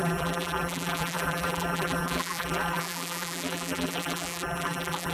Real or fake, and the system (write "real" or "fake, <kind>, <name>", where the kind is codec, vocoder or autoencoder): fake, vocoder, BigVGAN v2